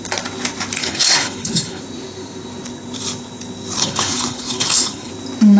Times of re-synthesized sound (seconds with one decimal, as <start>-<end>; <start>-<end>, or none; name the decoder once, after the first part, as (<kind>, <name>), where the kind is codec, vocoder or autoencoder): 0.8-1.8 (codec, HILCodec); 3.8-5.1